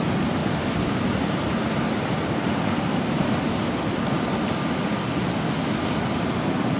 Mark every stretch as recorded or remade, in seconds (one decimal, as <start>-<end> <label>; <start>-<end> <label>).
0.0-6.8 recorded